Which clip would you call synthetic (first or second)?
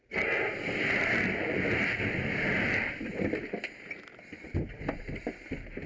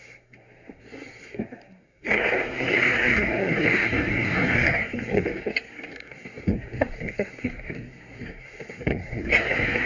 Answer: second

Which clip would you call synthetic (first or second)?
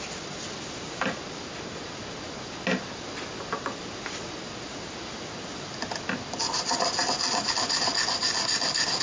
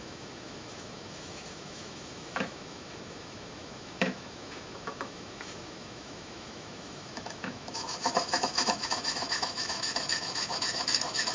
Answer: second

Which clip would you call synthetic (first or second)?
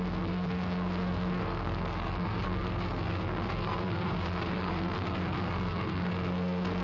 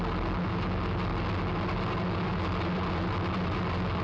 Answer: first